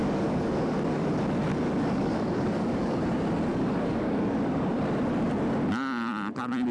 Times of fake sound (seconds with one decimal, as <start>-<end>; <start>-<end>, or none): 0.0-1.1; 1.5-3.0; 3.5-4.7